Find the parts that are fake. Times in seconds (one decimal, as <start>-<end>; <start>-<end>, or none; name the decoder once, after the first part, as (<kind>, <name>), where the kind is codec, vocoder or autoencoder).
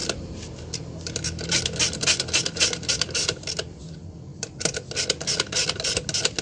0.0-3.8 (vocoder, BigVGAN v2); 4.3-4.9